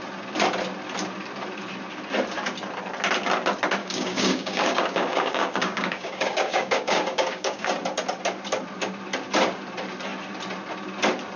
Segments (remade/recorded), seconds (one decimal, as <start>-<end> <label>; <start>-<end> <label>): 0.0-3.8 recorded; 3.8-7.7 remade; 7.7-11.4 recorded